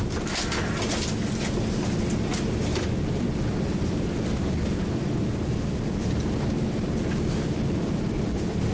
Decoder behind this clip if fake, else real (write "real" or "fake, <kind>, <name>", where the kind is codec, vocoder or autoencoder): real